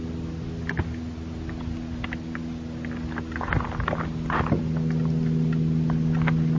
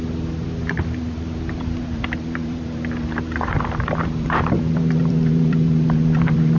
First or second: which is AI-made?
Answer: second